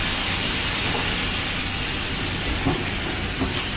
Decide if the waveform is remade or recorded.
recorded